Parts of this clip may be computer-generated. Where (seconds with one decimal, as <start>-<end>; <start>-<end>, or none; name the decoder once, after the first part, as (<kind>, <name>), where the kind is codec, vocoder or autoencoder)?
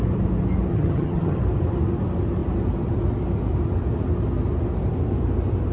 0.7-1.4 (vocoder, HiFi-GAN)